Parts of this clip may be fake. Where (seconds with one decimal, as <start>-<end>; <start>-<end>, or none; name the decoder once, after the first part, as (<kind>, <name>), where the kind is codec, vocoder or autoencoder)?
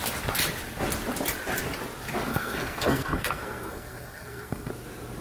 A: 2.3-4.7 (codec, SNAC)